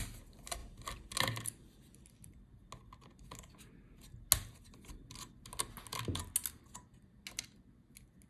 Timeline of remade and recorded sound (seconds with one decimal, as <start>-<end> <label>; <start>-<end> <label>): 0.0-8.3 recorded